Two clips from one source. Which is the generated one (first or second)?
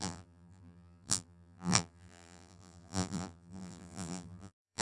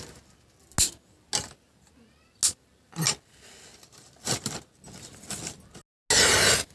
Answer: first